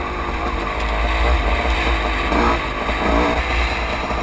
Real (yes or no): yes